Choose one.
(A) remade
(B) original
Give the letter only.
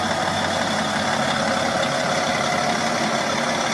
B